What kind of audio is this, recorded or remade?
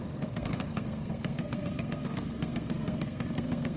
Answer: remade